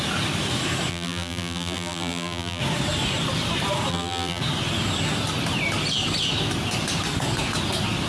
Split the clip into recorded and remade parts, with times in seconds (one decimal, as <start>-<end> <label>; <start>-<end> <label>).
0.0-0.9 recorded; 0.9-2.6 remade; 2.6-3.9 recorded; 3.9-4.4 remade; 4.4-8.1 recorded